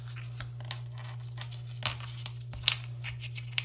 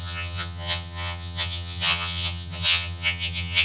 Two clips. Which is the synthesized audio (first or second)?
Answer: second